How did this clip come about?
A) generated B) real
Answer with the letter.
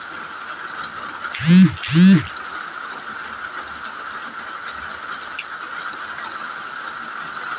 B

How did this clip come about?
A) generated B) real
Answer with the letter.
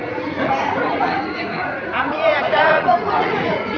A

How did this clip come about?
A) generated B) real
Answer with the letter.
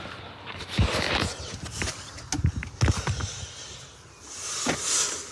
B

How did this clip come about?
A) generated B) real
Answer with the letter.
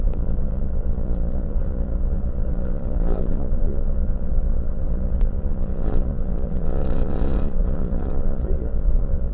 A